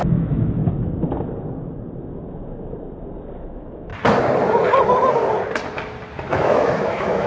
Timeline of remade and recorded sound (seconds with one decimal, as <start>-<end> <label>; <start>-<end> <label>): 0.0-0.6 remade; 0.6-3.4 recorded; 3.4-3.9 remade; 3.9-6.3 recorded; 6.3-7.3 remade